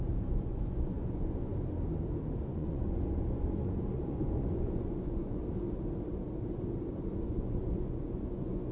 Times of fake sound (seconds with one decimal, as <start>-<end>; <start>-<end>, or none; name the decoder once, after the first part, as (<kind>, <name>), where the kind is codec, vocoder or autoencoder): 0.0-1.5 (vocoder, Vocos); 2.4-5.4; 7.2-8.7